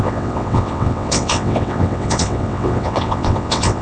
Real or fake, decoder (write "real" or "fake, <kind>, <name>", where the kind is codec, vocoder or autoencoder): fake, vocoder, WaveNeXt